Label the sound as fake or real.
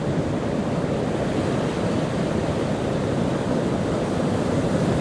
real